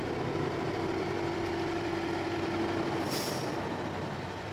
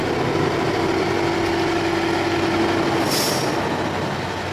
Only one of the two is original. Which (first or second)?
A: second